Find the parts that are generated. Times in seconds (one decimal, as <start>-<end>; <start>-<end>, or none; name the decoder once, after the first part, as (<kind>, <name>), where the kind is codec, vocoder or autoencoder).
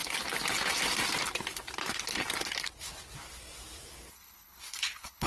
4.1-5.3 (codec, HILCodec)